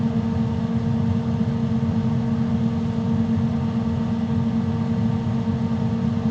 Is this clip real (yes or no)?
yes